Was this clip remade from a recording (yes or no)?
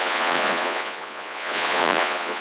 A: yes